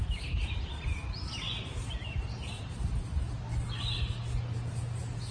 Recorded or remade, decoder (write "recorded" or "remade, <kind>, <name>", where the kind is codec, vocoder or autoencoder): recorded